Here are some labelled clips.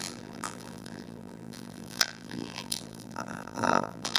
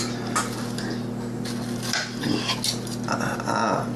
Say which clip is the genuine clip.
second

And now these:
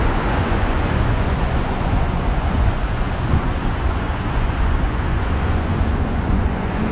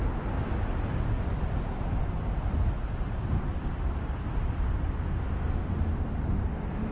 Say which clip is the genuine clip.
second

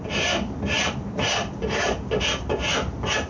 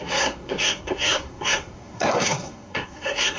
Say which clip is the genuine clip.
first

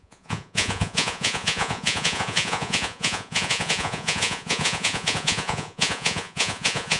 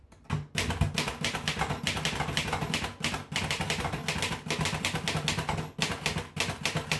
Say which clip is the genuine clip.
second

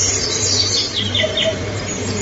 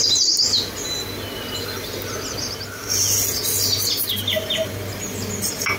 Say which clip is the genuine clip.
second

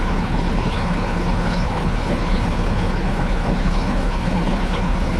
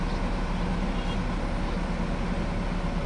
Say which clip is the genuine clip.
second